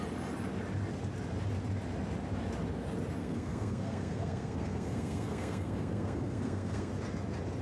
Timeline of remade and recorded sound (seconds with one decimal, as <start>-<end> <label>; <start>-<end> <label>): 0.0-3.2 recorded; 3.2-6.9 remade; 6.9-7.6 recorded